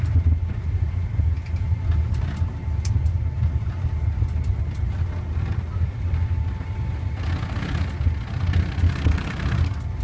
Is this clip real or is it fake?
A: real